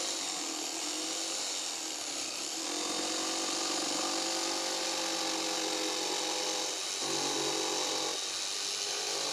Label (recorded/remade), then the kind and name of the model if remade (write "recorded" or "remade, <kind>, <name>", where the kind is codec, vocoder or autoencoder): recorded